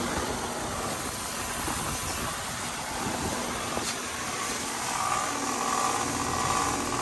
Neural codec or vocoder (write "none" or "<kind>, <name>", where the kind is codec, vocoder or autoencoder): none